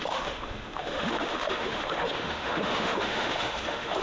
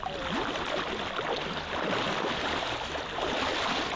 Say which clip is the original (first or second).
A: second